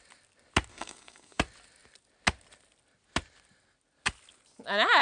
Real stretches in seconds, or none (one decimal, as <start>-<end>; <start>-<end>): 0.0-0.7; 1.4-5.0